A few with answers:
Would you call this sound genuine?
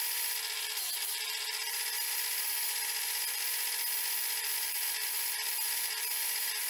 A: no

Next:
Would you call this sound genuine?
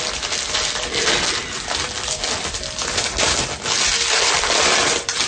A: yes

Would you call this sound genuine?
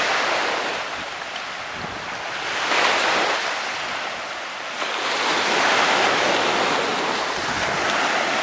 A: yes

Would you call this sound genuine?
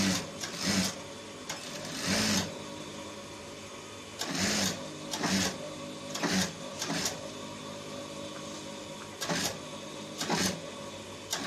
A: yes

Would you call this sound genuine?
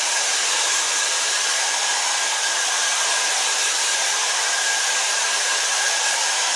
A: no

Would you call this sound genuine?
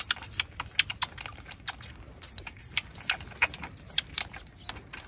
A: yes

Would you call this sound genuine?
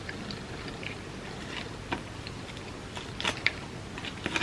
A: yes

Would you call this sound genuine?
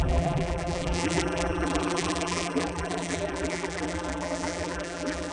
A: no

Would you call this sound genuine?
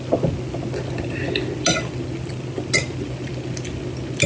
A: yes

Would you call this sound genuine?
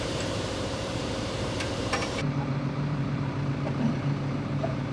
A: no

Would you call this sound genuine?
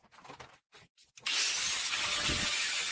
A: yes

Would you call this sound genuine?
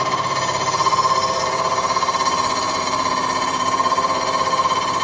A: no